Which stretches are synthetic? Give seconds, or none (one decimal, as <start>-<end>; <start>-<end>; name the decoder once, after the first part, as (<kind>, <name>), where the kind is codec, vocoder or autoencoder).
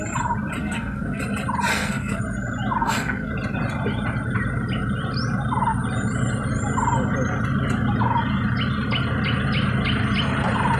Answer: 0.6-1.2 (codec, SNAC); 1.7-2.2; 2.8-3.3